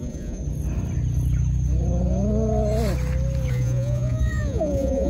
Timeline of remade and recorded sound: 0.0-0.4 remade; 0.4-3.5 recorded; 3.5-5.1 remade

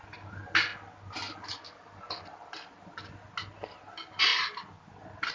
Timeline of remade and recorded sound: 0.0-5.3 recorded

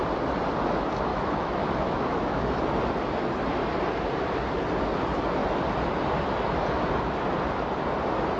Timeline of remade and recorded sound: 0.0-1.1 recorded; 1.1-2.6 remade; 2.6-8.4 recorded

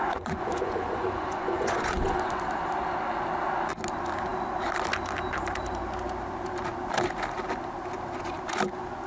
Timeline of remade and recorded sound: 0.0-2.4 remade; 2.4-9.1 recorded

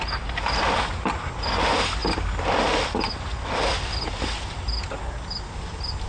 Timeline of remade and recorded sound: 0.0-6.1 recorded